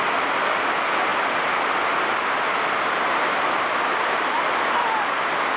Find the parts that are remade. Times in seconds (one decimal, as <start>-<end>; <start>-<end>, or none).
none